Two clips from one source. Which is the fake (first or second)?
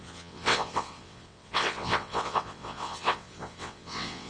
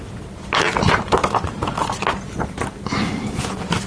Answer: first